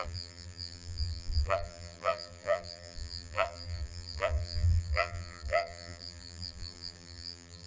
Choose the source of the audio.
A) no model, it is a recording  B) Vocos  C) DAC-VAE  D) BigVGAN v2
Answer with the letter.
D